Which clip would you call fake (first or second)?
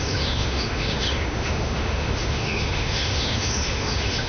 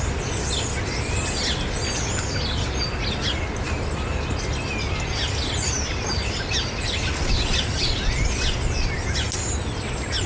first